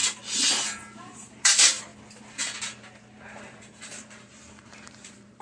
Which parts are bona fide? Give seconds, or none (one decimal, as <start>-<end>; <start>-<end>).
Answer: 0.0-1.0; 1.9-3.4